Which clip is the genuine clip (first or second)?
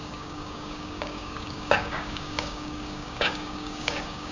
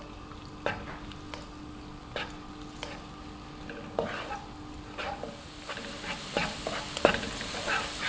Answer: second